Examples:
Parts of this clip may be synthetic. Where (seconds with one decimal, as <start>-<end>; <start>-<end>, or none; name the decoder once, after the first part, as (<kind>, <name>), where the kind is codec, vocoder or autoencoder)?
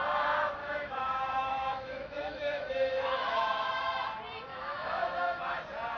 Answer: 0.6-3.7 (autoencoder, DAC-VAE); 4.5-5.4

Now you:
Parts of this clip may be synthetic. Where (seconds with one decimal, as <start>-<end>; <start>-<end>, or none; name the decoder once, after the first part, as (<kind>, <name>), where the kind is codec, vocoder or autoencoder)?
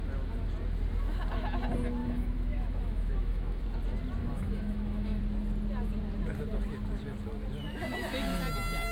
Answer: 2.0-3.6 (autoencoder, DAC-VAE); 4.2-5.2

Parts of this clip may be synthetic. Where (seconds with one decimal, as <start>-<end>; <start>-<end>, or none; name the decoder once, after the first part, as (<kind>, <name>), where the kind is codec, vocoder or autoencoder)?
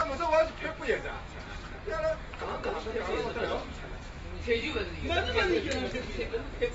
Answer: 0.0-1.3 (autoencoder, DAC-VAE); 3.7-5.0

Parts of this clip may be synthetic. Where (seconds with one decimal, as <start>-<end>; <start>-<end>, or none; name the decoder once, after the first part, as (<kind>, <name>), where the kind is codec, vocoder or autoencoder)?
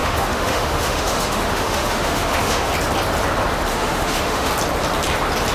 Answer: 0.0-2.7 (autoencoder, DAC-VAE); 3.7-4.5